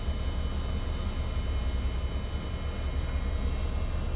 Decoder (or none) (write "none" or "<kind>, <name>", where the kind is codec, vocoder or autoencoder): none